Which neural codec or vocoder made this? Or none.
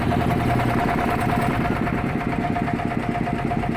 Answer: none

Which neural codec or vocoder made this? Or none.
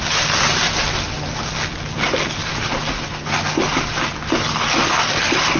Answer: none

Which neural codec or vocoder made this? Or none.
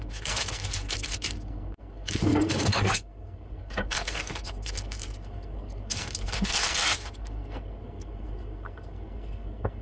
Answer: codec, SNAC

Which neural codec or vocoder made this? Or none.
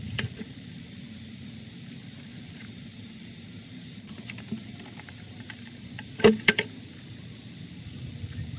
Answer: vocoder, BigVGAN v2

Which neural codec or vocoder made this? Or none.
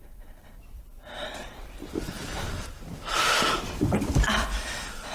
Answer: vocoder, BigVGAN v2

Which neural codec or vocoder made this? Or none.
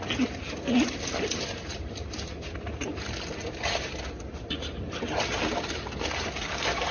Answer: none